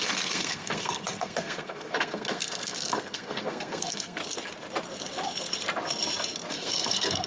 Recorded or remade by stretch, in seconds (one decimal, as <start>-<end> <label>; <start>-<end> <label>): 0.0-4.2 remade; 4.2-6.5 recorded; 6.5-7.3 remade